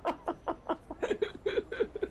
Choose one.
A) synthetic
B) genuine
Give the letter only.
B